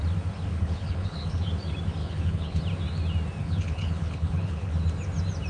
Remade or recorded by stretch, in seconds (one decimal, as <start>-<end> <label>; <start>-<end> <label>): 0.0-0.5 recorded; 0.5-1.5 remade; 1.5-2.0 recorded; 2.0-2.6 remade; 2.6-3.4 recorded; 3.4-4.7 remade; 4.7-5.5 recorded